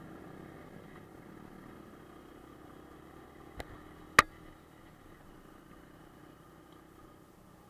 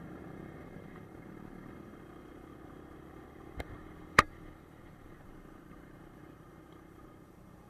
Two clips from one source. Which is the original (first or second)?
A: first